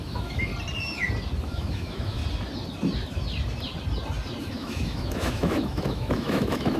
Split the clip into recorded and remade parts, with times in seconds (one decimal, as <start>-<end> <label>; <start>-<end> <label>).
0.0-0.5 remade; 0.5-1.4 recorded; 1.4-2.2 remade; 2.2-4.4 recorded; 4.4-6.8 remade

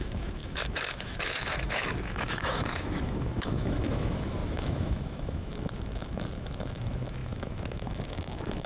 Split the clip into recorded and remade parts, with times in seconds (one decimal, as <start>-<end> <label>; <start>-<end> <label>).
0.0-8.7 remade

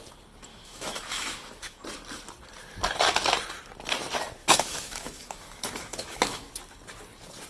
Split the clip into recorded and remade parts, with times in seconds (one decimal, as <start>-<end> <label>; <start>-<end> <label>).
0.0-0.5 recorded; 0.5-1.8 remade; 1.8-4.4 recorded; 4.4-6.5 remade; 6.5-7.5 recorded

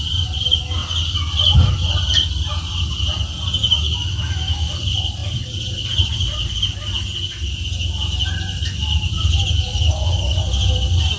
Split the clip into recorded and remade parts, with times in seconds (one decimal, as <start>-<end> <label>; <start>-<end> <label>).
0.0-3.6 recorded; 3.6-4.7 remade; 4.7-11.2 recorded

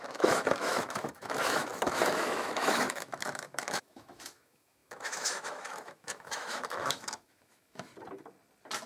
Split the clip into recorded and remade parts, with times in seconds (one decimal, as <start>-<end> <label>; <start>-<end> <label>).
0.0-7.9 remade; 7.9-8.9 recorded

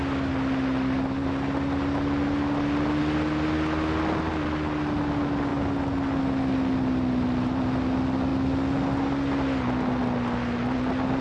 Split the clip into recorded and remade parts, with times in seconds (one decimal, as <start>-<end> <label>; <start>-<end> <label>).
0.0-11.2 recorded